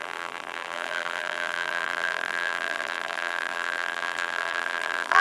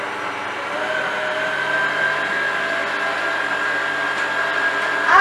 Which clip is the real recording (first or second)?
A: second